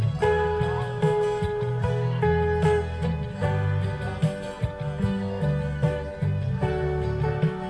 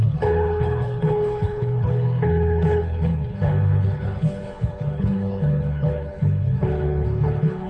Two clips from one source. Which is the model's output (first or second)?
second